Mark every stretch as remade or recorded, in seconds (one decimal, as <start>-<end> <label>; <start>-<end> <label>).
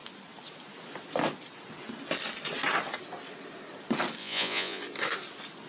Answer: 0.0-4.2 recorded; 4.2-4.8 remade; 4.8-5.7 recorded